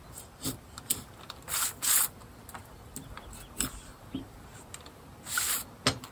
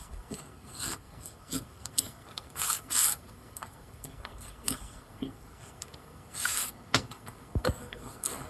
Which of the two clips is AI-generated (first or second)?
second